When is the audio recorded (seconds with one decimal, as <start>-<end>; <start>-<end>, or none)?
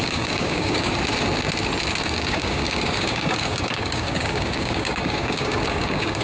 0.9-2.0